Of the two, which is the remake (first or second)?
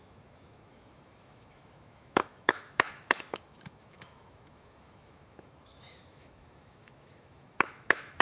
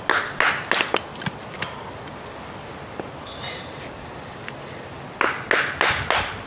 first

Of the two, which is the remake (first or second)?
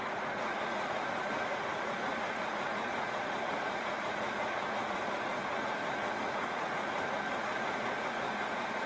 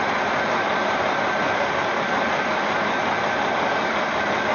first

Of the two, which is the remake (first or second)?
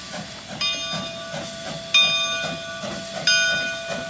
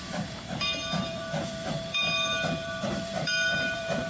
second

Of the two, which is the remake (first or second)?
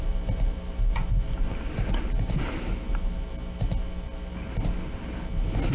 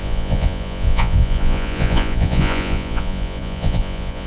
second